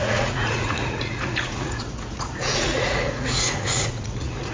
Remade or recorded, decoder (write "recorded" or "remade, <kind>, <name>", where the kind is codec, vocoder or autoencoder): remade, vocoder, Vocos